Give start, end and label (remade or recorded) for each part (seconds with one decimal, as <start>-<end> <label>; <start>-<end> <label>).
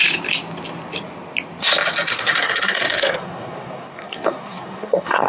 0.0-2.1 recorded; 2.1-5.3 remade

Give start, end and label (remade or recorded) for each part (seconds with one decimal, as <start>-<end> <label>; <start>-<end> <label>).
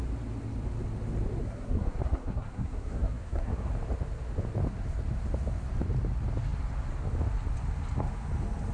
0.0-1.4 recorded; 1.4-3.7 remade; 3.7-8.7 recorded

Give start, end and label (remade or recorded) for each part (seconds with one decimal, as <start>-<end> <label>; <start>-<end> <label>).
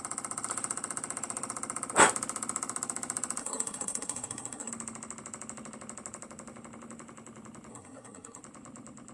0.0-3.4 recorded; 3.4-4.7 remade; 4.7-7.7 recorded; 7.7-8.4 remade; 8.4-9.1 recorded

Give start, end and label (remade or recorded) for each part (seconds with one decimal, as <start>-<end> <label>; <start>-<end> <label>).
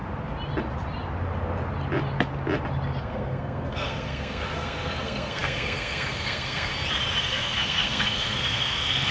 0.0-3.0 recorded; 3.0-6.7 remade; 6.7-7.2 recorded; 7.2-9.1 remade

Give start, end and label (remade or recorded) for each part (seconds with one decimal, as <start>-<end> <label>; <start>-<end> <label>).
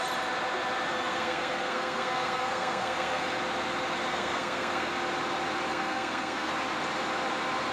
0.0-0.9 recorded; 0.9-3.4 remade; 3.4-4.1 recorded; 4.1-4.9 remade; 4.9-5.7 recorded; 5.7-6.5 remade; 6.5-7.7 recorded